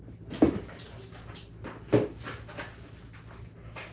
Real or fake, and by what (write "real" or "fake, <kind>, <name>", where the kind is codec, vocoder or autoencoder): real